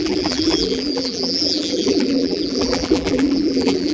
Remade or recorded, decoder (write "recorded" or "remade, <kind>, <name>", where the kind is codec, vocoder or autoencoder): remade, vocoder, BigVGAN v2